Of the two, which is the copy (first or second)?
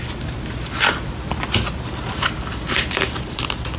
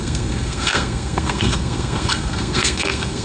second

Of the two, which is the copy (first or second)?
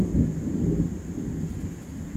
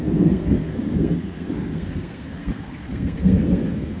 second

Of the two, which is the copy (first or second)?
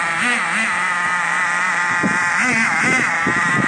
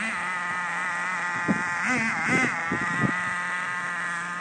first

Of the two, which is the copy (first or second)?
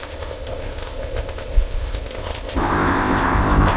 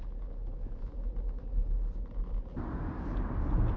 first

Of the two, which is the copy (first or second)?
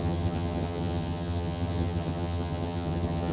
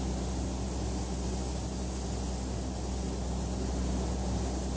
first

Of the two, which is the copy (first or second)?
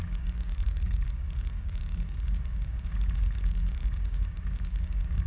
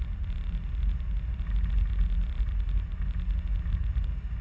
first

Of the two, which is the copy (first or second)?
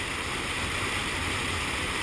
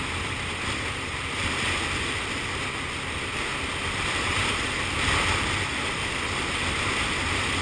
first